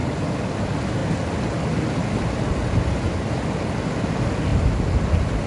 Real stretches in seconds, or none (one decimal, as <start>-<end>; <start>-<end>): 0.0-5.5